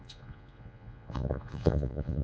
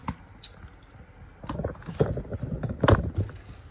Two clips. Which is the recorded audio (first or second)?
second